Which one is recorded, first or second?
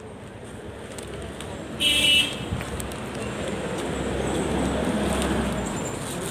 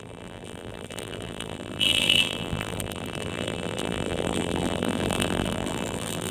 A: first